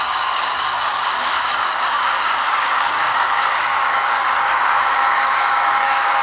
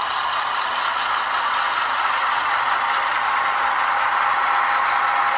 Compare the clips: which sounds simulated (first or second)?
first